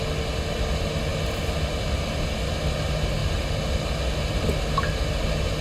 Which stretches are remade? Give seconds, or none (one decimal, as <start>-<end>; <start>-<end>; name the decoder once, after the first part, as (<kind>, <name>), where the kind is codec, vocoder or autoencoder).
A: none